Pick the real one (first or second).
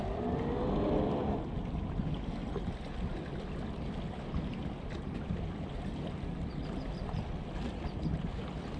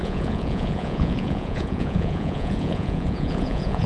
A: first